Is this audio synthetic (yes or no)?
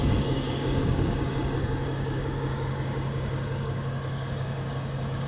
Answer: yes